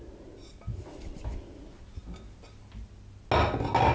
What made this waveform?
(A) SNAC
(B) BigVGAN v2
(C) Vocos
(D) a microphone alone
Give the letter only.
D